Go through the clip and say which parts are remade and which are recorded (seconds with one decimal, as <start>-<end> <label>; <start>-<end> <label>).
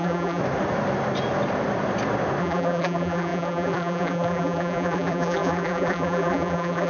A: 0.0-0.4 remade; 0.4-2.4 recorded; 2.4-6.9 remade